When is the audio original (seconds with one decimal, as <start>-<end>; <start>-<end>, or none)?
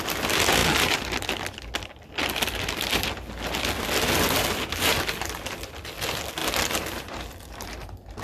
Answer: 0.0-8.2